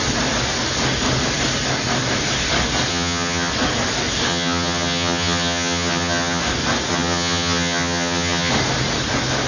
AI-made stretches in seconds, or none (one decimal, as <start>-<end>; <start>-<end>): 2.9-3.5; 4.3-6.4; 6.9-8.5